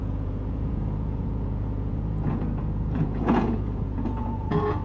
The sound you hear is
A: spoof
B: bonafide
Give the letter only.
A